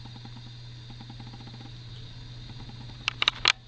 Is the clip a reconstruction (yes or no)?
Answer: no